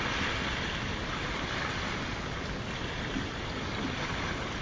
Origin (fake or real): real